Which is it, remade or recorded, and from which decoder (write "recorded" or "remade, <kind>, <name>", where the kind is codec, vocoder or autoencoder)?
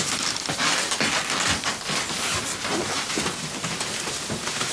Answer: recorded